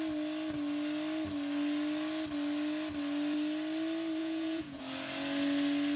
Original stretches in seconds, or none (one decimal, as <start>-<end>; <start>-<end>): 0.0-4.2; 4.8-6.0

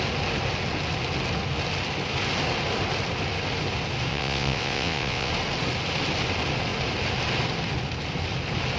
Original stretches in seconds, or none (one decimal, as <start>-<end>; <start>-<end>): 0.0-4.1; 5.3-8.8

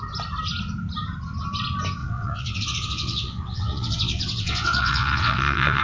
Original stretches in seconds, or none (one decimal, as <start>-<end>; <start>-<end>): 0.0-2.0